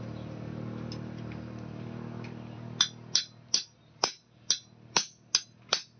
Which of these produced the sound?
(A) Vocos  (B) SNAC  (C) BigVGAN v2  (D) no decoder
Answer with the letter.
D